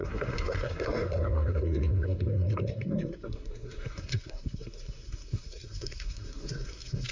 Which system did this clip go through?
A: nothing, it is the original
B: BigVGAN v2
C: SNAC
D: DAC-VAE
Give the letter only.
C